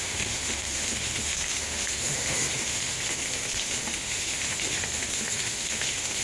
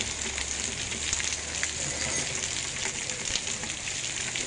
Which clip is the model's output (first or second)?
first